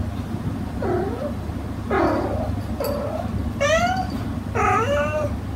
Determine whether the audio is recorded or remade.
recorded